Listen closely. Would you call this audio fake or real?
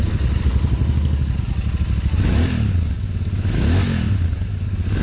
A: real